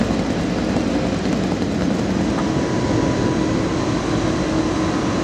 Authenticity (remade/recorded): recorded